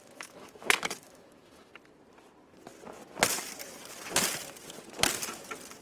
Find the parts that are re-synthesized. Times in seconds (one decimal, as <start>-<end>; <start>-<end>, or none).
0.0-1.7